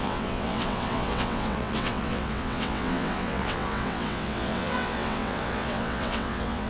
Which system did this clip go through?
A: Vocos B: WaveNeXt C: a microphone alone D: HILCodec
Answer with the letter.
B